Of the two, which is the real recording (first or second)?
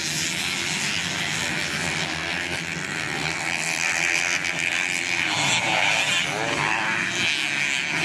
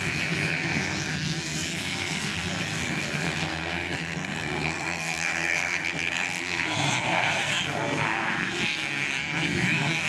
first